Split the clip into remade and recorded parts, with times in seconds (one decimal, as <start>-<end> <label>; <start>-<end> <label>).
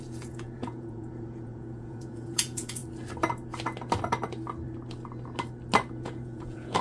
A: 0.0-2.8 remade; 2.8-6.0 recorded; 6.0-6.8 remade